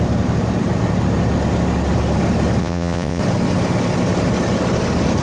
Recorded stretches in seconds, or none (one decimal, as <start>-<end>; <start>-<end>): 0.0-2.6; 3.2-5.2